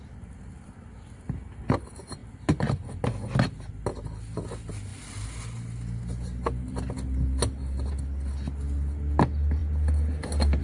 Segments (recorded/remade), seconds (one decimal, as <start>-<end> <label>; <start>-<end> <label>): 0.0-10.6 recorded